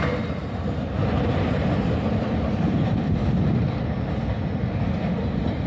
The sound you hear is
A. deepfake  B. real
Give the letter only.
B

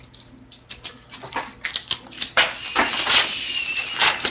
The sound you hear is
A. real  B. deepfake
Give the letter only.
A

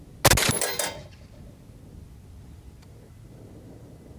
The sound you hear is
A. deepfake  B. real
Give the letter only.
B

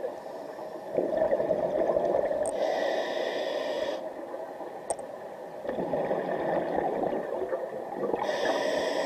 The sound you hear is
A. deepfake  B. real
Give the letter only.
B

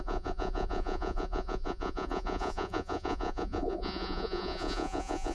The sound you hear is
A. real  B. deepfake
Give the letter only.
B